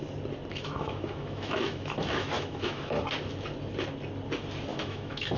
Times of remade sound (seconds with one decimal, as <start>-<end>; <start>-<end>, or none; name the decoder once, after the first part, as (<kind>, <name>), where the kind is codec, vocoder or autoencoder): 0.5-3.0 (autoencoder, DAC-VAE); 4.7-5.4